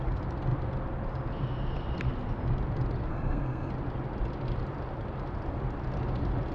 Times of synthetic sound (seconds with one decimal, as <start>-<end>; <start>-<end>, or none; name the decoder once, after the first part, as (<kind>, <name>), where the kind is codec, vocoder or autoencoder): 3.1-3.7 (codec, SNAC)